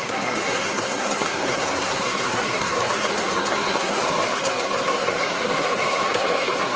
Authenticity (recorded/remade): remade